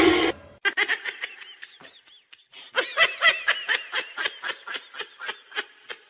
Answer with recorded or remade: recorded